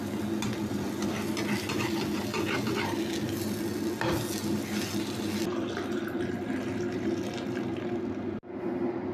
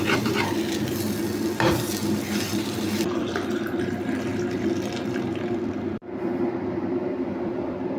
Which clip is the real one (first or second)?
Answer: first